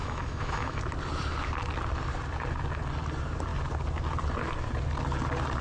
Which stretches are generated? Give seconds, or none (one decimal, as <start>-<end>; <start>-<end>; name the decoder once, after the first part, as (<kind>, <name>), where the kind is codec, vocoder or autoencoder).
0.0-0.8 (autoencoder, DAC-VAE)